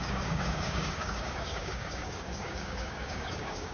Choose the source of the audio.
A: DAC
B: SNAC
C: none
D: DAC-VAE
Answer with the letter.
A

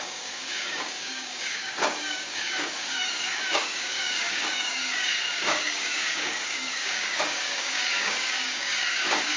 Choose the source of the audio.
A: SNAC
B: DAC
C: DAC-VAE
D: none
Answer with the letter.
B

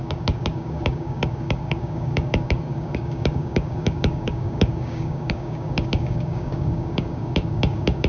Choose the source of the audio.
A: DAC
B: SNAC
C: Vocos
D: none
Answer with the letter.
A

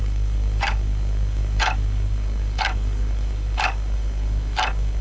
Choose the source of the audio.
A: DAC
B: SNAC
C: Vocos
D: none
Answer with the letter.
A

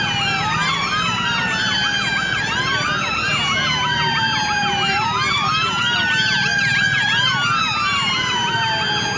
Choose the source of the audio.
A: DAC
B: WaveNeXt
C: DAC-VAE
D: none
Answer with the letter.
D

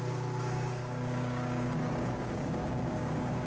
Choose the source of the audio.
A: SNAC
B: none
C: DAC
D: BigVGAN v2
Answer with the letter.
C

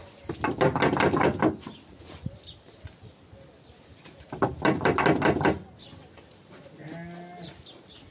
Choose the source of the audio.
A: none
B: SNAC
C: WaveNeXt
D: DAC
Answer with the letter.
A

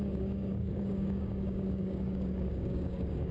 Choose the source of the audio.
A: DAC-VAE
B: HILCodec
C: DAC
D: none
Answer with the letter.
C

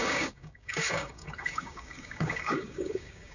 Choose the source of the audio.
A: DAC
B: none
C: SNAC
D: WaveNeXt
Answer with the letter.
A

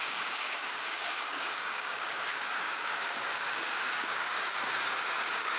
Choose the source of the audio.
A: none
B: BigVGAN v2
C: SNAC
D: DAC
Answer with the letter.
D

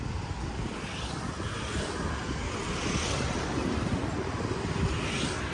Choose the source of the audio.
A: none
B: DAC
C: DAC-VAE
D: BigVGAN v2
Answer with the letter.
A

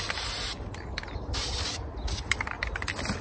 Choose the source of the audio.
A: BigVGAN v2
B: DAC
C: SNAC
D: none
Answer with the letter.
D